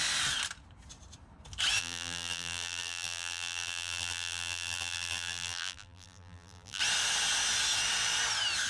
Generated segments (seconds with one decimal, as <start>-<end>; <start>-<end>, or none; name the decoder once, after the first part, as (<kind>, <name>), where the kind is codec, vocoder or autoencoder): 1.8-6.8 (vocoder, BigVGAN v2)